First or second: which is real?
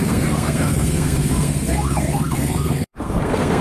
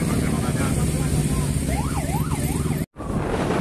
second